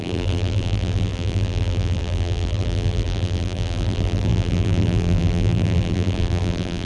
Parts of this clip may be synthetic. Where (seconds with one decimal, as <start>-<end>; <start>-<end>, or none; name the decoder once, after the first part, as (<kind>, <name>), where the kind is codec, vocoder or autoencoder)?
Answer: 0.0-6.9 (vocoder, BigVGAN v2)